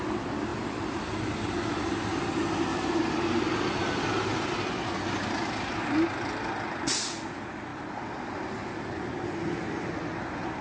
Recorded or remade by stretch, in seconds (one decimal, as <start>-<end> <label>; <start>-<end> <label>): 0.0-0.5 recorded; 0.5-1.0 remade; 1.0-2.7 recorded; 2.7-3.4 remade; 3.4-7.7 recorded; 7.7-8.2 remade; 8.2-10.6 recorded